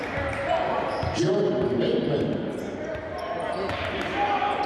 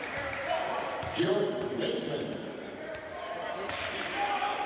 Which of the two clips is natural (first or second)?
first